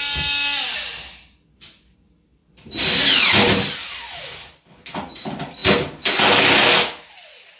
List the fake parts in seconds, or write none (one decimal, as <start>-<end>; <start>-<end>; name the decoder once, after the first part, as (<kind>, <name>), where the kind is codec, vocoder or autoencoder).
none